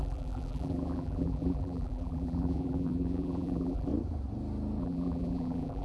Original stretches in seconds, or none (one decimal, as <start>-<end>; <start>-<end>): 3.9-4.8